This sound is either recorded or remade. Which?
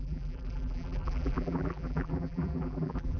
remade